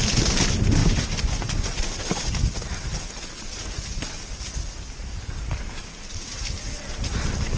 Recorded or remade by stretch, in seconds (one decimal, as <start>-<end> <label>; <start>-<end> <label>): 0.0-0.8 recorded; 0.8-1.8 remade; 1.8-7.6 recorded